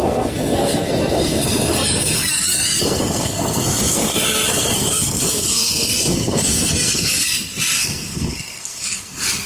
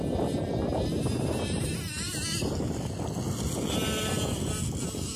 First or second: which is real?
second